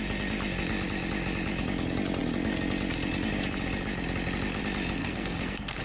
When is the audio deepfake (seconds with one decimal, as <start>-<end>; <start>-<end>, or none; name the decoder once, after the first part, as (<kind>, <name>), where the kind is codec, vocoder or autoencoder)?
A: 5.0-5.8 (codec, SNAC)